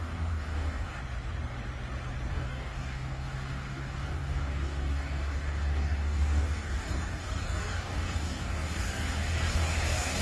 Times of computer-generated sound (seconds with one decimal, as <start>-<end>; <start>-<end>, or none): 0.0-1.0; 2.3-10.2